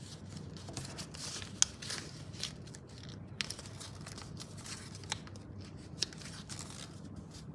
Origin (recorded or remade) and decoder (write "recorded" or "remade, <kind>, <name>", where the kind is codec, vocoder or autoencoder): recorded